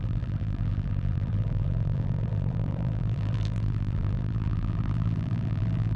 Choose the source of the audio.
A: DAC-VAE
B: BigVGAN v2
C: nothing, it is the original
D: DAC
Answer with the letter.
B